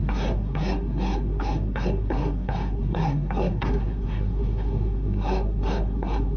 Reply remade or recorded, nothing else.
remade